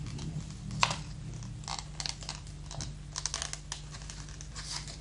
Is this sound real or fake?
real